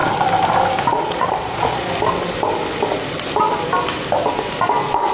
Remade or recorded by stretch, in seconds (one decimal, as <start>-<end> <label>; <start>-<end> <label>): 0.0-0.9 recorded; 0.9-1.9 remade; 1.9-5.1 recorded